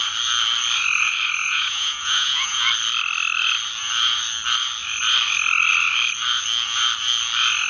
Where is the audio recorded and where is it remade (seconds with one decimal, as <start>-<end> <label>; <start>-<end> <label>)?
0.0-1.4 recorded; 1.4-2.6 remade; 2.6-7.7 recorded